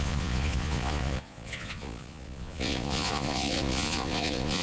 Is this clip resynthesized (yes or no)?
yes